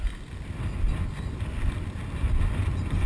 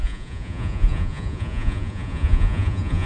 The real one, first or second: first